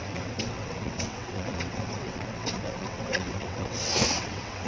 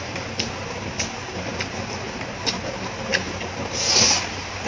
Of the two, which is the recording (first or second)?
second